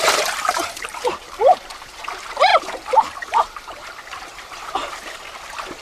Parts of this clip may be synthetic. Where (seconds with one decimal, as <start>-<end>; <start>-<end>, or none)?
0.0-2.5; 3.2-4.8